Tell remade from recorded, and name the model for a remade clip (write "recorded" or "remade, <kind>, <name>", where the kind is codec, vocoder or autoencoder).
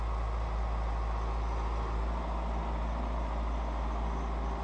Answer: recorded